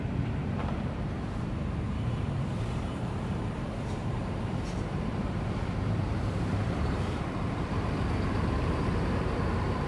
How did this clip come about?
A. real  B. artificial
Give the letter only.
B